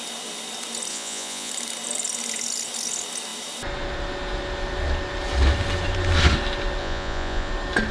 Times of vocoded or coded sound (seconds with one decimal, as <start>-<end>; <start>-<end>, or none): 0.9-1.5; 6.8-7.5